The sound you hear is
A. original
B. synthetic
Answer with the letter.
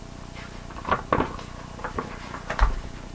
A